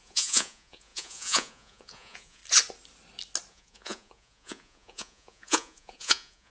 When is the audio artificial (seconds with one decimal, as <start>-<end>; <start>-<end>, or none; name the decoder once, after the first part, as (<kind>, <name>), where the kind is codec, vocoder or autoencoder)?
0.0-2.4 (vocoder, Vocos); 3.5-6.5